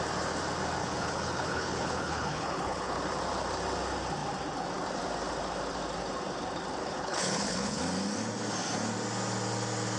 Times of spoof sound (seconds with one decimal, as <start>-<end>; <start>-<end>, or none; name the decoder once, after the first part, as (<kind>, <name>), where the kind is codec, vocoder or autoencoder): 0.8-3.0 (codec, HILCodec); 6.8-7.8